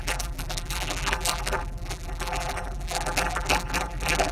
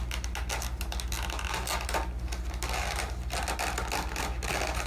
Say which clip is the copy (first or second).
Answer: first